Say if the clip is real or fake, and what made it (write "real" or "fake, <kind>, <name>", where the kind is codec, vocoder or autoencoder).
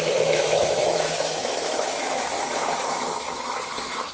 fake, autoencoder, DAC-VAE